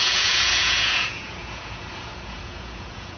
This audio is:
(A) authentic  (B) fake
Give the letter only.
B